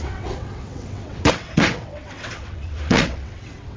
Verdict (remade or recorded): remade